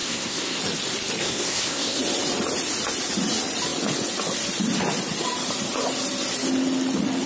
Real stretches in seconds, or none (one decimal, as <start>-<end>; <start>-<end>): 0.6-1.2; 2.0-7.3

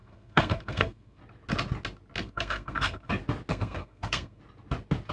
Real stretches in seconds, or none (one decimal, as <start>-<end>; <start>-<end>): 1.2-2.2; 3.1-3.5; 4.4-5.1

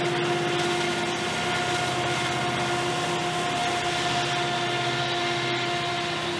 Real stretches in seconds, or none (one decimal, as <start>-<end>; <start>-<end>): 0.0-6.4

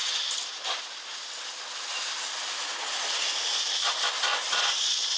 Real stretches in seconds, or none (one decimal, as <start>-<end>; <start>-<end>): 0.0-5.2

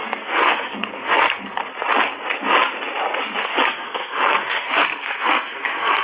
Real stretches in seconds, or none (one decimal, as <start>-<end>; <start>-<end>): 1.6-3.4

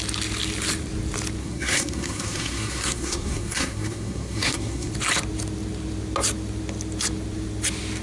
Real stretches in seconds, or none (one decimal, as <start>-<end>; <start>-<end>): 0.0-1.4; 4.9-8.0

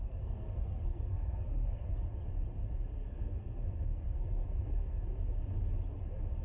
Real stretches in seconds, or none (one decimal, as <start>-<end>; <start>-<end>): 2.0-3.0; 5.2-6.4

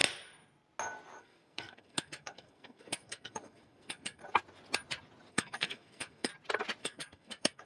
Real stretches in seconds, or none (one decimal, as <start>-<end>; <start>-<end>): 0.0-1.2; 4.2-5.3; 6.3-6.8